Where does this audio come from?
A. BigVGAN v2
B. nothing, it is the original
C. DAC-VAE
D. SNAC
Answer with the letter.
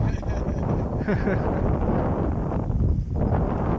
B